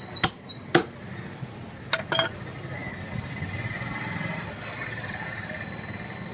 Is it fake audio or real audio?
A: real